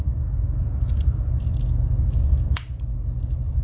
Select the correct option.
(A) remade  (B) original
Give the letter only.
B